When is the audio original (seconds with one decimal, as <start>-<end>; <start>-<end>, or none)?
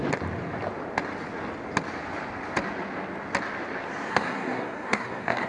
0.0-4.1